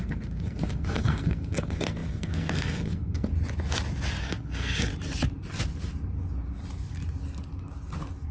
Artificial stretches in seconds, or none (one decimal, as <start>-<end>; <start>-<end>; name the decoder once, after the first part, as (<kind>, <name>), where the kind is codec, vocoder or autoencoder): 0.0-3.3 (codec, SNAC); 4.2-4.9